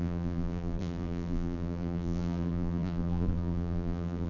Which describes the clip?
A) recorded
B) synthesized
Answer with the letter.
B